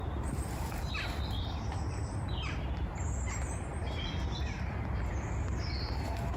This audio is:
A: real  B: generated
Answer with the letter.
A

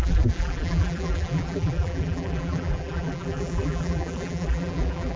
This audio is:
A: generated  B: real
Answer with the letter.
A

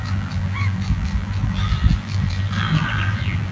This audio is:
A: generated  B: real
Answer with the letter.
A